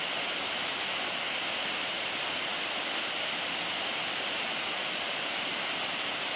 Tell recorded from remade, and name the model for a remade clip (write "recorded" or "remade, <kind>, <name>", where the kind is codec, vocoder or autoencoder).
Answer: recorded